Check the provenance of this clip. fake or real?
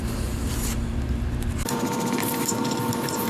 fake